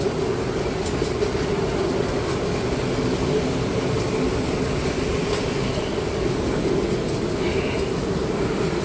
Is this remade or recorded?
recorded